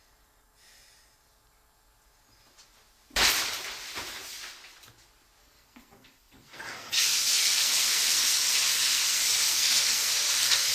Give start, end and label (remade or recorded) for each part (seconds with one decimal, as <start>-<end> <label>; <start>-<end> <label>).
0.0-5.4 recorded; 5.4-10.7 remade